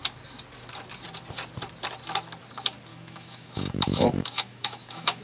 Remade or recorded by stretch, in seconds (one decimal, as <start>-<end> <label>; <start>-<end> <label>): 0.0-2.9 recorded; 2.9-5.2 remade